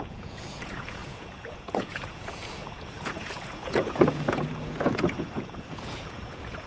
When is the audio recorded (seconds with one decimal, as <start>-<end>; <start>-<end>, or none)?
none